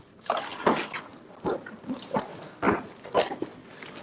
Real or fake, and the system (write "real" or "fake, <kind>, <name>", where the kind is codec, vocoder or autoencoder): real